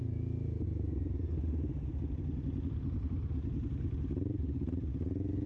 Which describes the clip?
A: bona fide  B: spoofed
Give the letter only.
A